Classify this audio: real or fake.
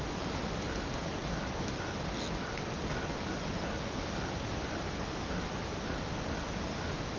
fake